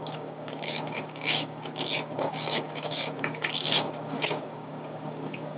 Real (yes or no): no